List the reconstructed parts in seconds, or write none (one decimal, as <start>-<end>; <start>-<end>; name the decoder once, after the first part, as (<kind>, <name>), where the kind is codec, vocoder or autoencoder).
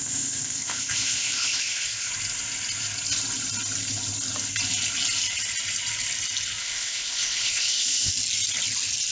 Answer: 0.0-2.1 (codec, ZipCodec); 6.6-8.1